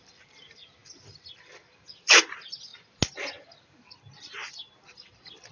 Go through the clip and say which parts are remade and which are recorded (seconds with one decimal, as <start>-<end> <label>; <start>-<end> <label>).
0.0-2.7 remade; 2.7-3.3 recorded; 3.3-5.5 remade